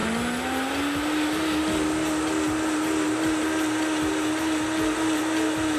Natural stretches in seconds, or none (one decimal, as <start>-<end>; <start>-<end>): 0.0-5.8